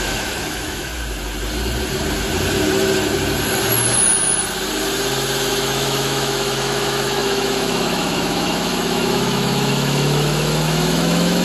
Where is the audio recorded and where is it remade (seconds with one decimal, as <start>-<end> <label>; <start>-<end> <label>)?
0.0-0.9 remade; 0.9-5.5 recorded; 5.5-11.4 remade